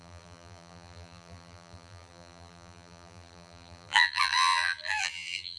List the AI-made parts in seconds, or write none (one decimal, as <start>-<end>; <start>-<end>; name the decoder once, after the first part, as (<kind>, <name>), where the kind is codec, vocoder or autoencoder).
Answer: 0.0-5.6 (vocoder, BigVGAN v2)